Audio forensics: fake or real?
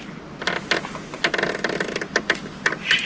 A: real